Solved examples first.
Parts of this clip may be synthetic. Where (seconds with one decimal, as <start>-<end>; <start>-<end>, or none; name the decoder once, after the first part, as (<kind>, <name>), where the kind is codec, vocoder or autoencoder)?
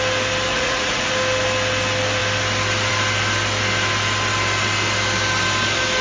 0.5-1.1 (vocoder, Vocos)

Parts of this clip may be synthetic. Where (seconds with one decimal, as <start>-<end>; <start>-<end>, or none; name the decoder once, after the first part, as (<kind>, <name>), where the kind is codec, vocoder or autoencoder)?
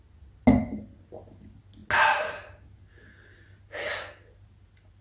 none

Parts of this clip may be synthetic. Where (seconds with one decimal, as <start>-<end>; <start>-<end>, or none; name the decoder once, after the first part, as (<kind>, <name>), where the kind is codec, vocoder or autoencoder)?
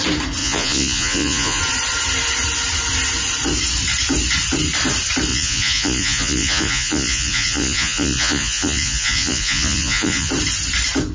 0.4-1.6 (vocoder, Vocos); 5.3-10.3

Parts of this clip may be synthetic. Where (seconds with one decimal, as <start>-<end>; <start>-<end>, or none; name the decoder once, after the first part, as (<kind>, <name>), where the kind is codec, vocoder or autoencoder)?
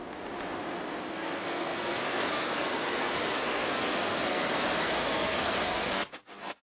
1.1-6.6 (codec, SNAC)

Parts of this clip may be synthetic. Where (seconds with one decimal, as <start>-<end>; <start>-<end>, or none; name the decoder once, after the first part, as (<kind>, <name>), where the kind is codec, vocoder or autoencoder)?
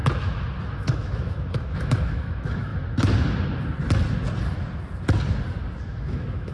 0.7-2.7 (autoencoder, DAC-VAE); 5.8-6.5